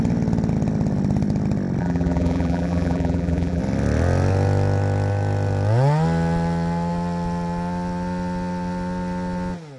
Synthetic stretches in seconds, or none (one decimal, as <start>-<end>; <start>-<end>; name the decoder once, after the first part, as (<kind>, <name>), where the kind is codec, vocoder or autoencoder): 1.8-3.6 (vocoder, BigVGAN v2)